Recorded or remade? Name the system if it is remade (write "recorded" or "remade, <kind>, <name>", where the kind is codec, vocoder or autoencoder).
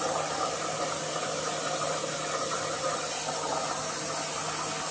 recorded